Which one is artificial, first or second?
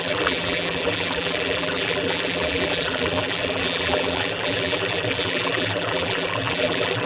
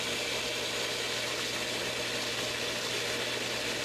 first